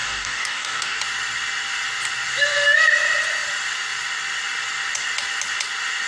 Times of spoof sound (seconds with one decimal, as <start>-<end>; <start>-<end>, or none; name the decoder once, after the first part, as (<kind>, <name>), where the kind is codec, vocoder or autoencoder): 0.0-1.0 (codec, DAC)